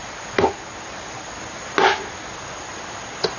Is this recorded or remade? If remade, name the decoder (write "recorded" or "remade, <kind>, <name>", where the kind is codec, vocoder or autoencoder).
recorded